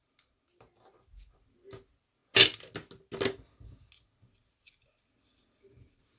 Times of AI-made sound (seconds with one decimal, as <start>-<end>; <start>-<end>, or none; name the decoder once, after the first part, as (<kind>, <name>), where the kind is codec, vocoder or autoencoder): none